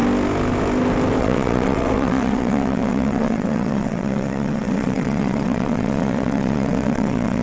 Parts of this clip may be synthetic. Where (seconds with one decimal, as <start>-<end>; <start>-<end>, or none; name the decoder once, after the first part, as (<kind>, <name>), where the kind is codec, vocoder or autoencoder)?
1.2-7.4 (vocoder, WaveNeXt)